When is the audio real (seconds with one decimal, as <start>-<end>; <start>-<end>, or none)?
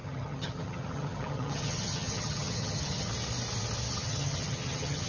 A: 3.1-3.9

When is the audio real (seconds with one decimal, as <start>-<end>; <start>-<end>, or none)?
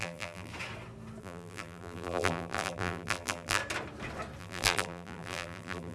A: 0.5-1.2; 3.6-4.4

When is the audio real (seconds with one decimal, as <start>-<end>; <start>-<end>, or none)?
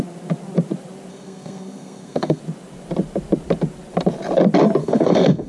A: 0.0-1.1; 2.4-4.8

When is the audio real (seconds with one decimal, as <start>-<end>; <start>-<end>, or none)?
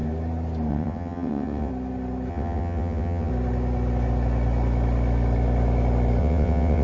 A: 0.0-0.7; 1.7-2.3; 3.3-6.2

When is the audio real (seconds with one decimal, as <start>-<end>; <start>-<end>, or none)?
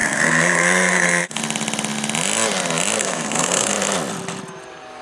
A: 1.4-3.0; 3.7-5.0